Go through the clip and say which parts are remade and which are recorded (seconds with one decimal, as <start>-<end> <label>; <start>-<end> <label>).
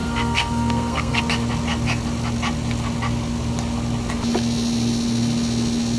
0.0-1.2 remade; 1.2-6.0 recorded